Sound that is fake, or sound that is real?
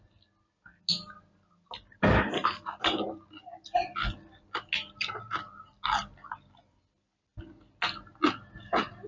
real